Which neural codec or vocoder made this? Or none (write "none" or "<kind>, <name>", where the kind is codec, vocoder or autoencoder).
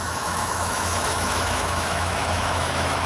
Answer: autoencoder, DAC-VAE